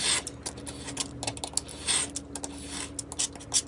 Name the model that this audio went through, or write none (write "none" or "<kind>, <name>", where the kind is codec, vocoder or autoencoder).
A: none